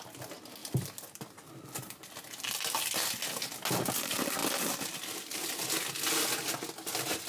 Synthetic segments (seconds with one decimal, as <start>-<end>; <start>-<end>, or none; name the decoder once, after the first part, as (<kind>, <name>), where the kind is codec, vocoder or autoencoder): none